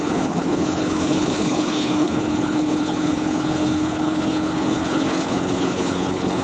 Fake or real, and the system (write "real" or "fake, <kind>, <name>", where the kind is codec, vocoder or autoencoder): fake, codec, HILCodec